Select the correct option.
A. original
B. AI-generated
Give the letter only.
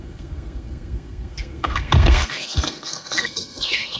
B